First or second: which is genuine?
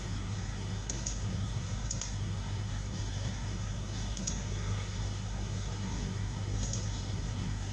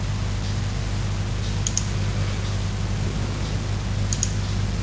second